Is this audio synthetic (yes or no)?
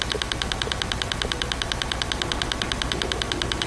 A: no